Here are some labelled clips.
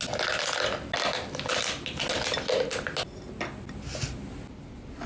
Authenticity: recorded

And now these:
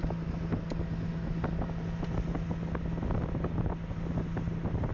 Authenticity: recorded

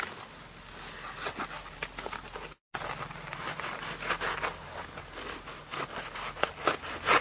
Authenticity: recorded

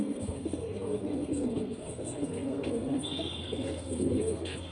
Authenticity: remade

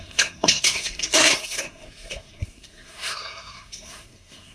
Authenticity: remade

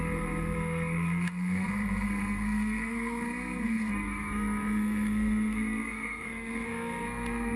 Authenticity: remade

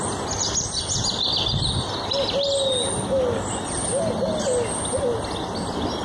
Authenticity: recorded